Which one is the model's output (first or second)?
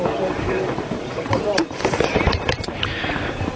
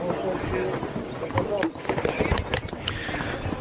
first